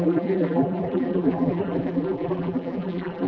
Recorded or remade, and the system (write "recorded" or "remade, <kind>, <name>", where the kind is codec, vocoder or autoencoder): remade, vocoder, BigVGAN v2